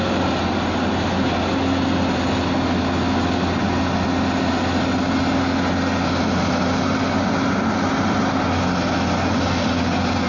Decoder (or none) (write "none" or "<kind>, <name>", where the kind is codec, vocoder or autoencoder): none